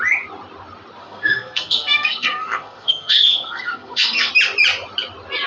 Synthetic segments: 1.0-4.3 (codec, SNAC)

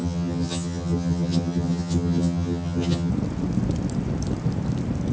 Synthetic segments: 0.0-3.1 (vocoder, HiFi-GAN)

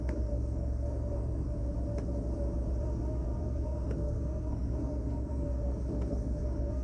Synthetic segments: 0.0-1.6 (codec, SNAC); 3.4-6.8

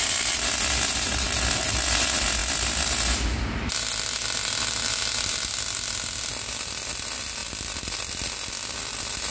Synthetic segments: none

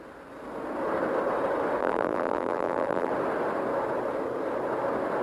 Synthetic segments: 1.8-3.1 (vocoder, BigVGAN v2)

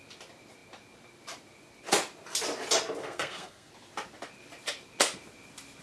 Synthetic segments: 3.0-3.7 (codec, SNAC)

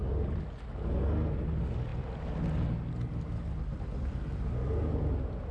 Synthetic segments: none